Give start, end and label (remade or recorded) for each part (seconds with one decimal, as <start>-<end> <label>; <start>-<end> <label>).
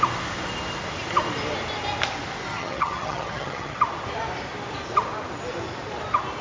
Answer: 0.0-2.5 recorded; 2.5-3.8 remade; 3.8-6.4 recorded